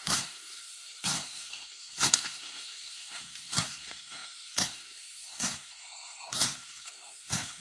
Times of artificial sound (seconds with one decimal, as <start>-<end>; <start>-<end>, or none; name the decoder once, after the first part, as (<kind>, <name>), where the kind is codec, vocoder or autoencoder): 0.0-7.6 (codec, SNAC)